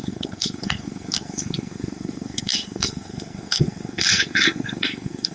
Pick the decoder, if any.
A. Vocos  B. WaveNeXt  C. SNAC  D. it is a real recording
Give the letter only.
C